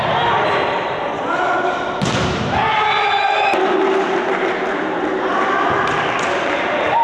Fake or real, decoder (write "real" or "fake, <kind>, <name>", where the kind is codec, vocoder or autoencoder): real